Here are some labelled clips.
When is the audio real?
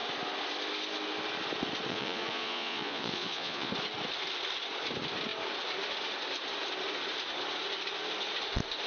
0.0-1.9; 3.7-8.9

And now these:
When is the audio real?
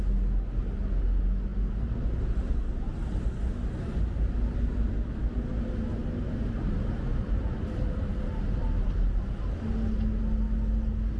0.0-6.0; 8.2-11.2